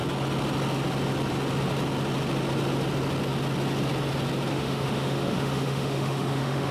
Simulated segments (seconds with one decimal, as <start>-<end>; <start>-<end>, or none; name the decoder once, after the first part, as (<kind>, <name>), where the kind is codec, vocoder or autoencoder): 4.5-6.7 (autoencoder, DAC-VAE)